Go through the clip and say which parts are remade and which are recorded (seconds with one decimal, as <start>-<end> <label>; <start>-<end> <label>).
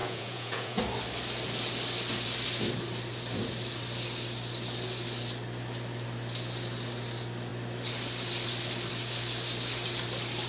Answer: 0.0-0.8 remade; 0.8-10.5 recorded